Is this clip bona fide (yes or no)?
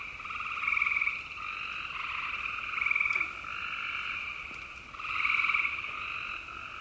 yes